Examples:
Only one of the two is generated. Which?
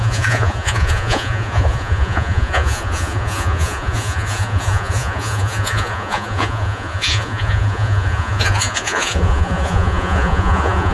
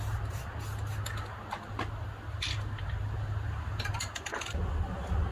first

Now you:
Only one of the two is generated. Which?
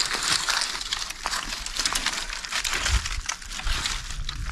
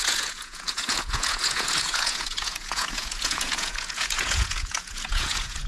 second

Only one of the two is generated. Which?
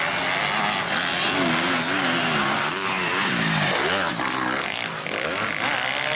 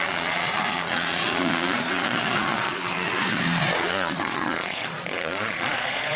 second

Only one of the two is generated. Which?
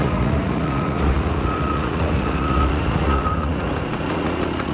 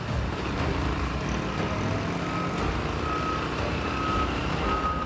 first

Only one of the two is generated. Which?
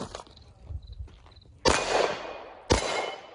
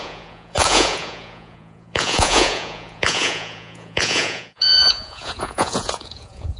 second